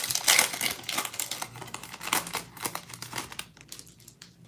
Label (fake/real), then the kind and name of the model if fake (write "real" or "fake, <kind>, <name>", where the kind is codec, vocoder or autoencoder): real